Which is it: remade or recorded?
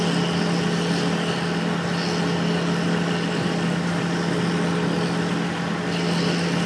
recorded